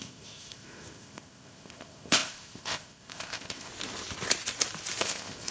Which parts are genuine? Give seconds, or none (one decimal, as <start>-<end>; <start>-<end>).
3.7-5.0